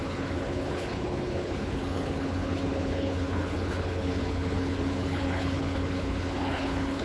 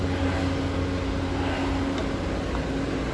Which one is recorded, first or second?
second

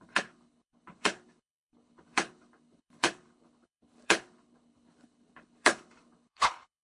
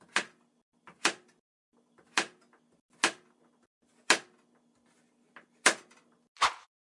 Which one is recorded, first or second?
second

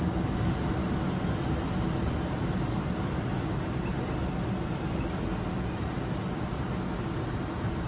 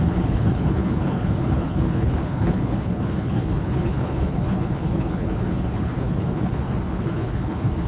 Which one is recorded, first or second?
first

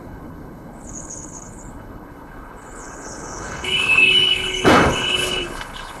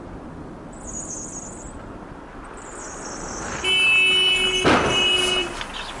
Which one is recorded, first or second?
second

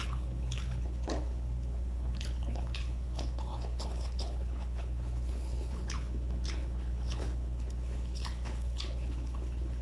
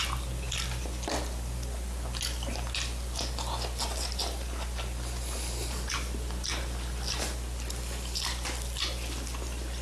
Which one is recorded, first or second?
second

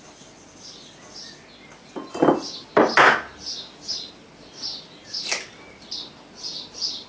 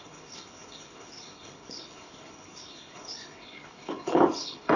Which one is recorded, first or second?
first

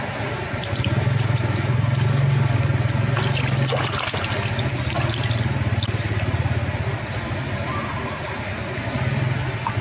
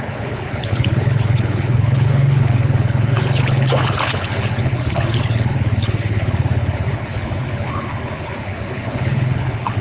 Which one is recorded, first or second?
first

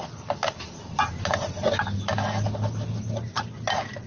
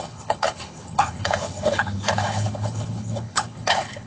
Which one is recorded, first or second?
first